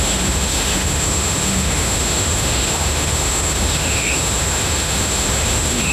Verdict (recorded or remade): remade